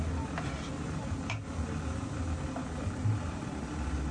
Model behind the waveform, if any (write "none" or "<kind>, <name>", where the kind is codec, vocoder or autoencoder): none